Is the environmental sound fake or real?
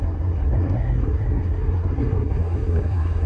fake